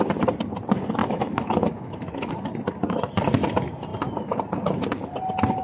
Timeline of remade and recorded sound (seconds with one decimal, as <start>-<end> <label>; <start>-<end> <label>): 0.0-1.0 recorded; 1.0-2.3 remade; 2.3-5.6 recorded

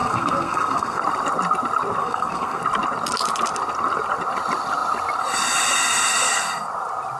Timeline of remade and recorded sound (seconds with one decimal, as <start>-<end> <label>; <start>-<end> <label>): 0.0-1.0 remade; 1.0-2.0 recorded; 2.0-2.6 remade; 2.6-7.2 recorded

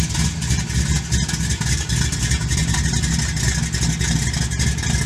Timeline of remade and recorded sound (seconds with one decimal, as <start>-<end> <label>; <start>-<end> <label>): 0.0-5.1 recorded

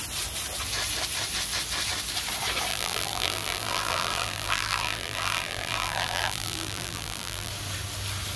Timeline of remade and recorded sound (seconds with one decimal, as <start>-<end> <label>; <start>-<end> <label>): 0.0-2.7 recorded; 2.7-7.5 remade; 7.5-8.4 recorded

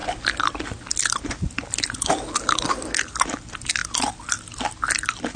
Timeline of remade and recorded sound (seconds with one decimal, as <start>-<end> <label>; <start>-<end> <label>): 0.0-5.4 recorded